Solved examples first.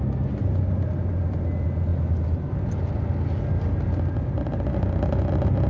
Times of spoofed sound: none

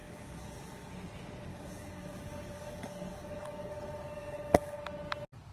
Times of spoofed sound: 0.0-0.9 (codec, DAC); 1.5-4.8

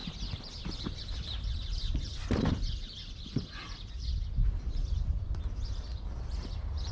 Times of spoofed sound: 0.0-4.1 (vocoder, BigVGAN v2); 5.9-6.9

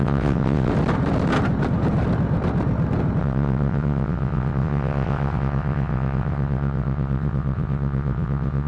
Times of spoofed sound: 0.0-0.7 (vocoder, WaveNeXt); 3.2-8.7

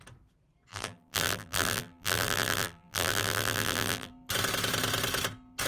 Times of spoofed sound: 0.7-4.1 (vocoder, BigVGAN v2)

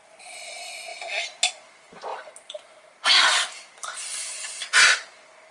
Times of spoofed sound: none